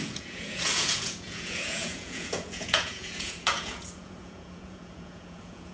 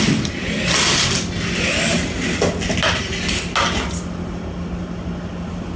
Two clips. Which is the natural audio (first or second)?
second